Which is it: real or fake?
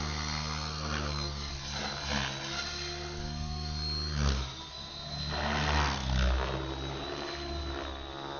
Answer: real